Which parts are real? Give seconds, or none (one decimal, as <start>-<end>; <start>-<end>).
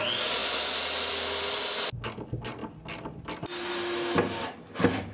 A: 0.0-5.1